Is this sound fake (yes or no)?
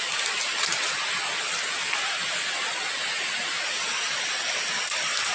no